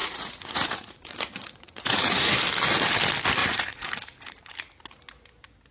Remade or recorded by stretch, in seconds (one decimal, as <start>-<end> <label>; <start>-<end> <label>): 0.0-2.3 remade; 2.3-3.4 recorded; 3.4-4.5 remade; 4.5-5.7 recorded